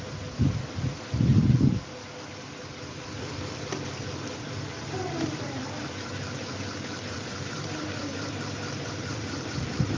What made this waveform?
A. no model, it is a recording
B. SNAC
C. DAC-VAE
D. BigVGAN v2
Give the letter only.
D